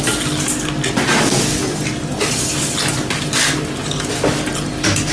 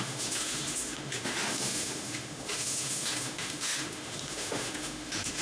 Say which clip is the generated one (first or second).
second